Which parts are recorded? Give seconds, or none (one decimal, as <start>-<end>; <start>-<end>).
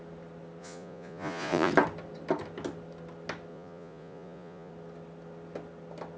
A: 0.0-0.6; 1.7-3.5; 4.7-6.2